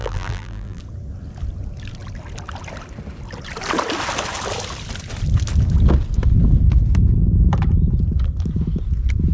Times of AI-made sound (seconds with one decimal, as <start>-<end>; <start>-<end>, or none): 0.0-0.8